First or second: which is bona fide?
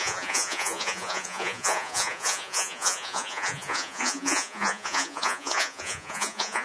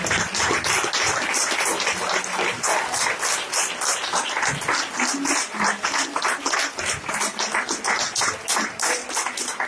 second